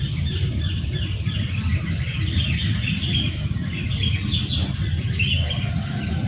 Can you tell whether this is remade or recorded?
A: recorded